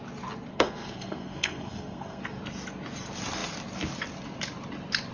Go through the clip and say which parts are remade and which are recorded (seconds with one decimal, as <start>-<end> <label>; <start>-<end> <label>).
0.0-0.5 recorded; 0.5-2.2 remade; 2.2-5.1 recorded